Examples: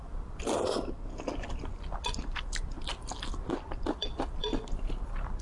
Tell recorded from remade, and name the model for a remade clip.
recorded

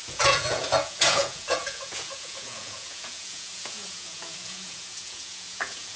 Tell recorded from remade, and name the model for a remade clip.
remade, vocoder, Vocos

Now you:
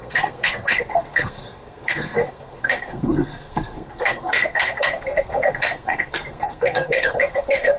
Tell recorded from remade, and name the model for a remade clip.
remade, codec, SNAC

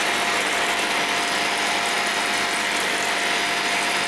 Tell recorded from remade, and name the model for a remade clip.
recorded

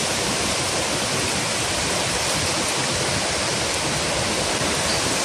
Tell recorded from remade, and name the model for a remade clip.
recorded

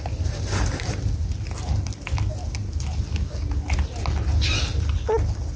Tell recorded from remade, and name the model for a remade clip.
recorded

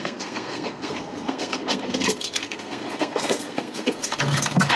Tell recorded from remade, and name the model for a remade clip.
remade, codec, SNAC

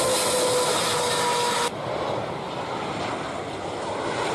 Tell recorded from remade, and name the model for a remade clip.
recorded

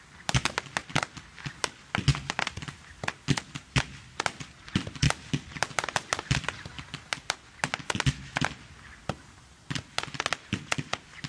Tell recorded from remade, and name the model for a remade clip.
recorded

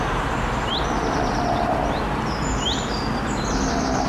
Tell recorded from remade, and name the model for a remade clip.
recorded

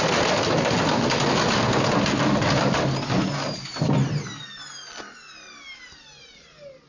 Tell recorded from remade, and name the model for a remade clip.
recorded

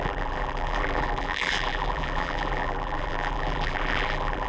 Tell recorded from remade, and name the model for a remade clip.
remade, vocoder, BigVGAN v2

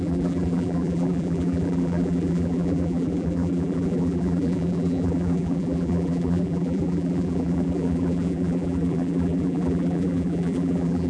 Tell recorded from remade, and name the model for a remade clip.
remade, vocoder, BigVGAN v2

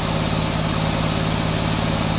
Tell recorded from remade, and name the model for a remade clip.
recorded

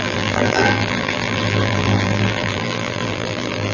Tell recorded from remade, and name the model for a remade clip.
remade, vocoder, BigVGAN v2